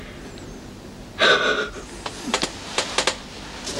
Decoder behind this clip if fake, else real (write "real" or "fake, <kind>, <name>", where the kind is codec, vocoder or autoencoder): real